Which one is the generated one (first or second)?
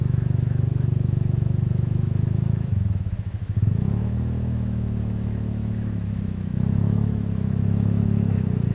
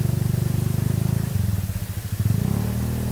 first